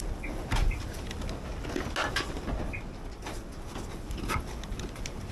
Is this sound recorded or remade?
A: recorded